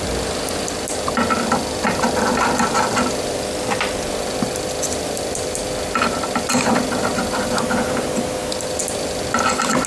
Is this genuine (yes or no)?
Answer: yes